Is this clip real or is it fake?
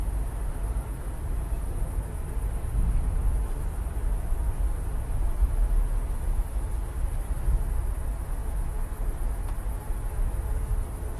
real